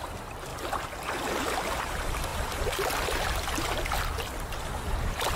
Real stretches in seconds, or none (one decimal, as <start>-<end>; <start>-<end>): 0.5-1.4; 2.3-4.6